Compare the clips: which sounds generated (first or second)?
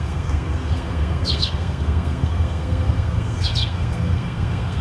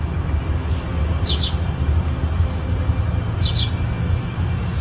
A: first